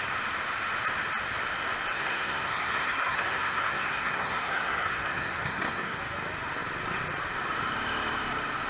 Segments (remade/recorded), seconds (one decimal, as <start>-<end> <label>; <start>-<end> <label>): 0.0-1.9 recorded; 1.9-6.0 remade; 6.0-8.7 recorded

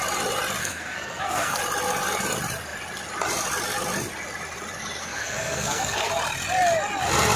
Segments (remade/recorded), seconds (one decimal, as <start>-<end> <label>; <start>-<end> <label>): 0.0-0.6 recorded; 0.6-1.6 remade; 1.6-5.0 recorded; 5.0-6.1 remade; 6.1-7.4 recorded

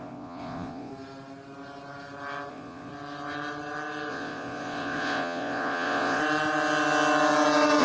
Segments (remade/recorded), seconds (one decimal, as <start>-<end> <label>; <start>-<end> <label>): 0.0-0.9 remade; 0.9-2.5 recorded; 2.5-2.9 remade; 2.9-4.1 recorded; 4.1-6.2 remade; 6.2-7.8 recorded